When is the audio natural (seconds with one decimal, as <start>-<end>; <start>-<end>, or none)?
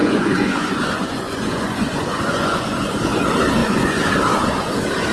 3.0-3.6; 4.1-5.1